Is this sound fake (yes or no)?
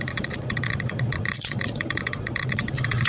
yes